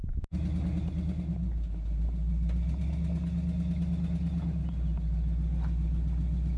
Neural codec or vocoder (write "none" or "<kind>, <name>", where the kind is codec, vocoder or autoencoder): none